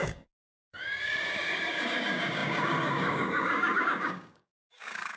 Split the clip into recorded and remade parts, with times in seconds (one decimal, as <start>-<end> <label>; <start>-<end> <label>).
0.0-5.2 remade